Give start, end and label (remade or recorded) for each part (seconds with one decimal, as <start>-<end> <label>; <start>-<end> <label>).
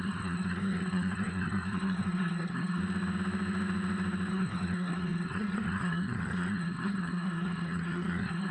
0.0-2.8 remade; 2.8-4.3 recorded; 4.3-8.5 remade